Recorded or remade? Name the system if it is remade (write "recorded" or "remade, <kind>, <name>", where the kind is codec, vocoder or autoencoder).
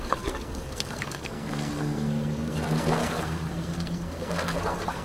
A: remade, codec, SNAC